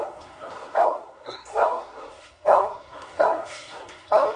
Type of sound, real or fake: fake